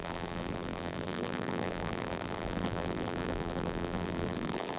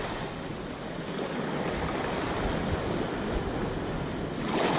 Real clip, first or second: second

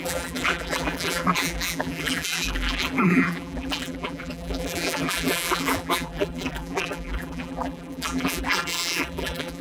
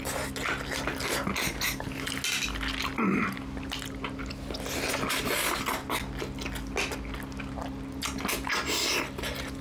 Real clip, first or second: second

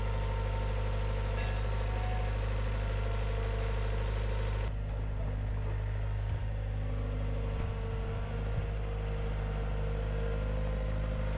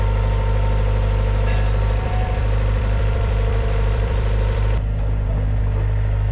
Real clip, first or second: first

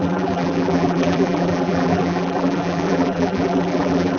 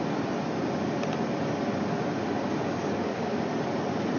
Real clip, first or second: second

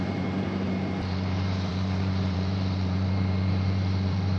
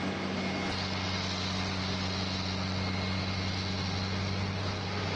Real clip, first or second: second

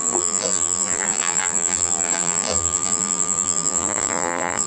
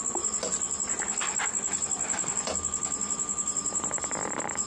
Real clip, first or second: second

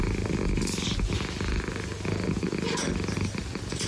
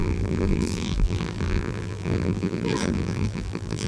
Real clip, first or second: first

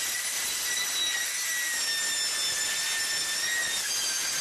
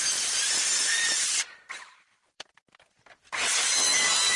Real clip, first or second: first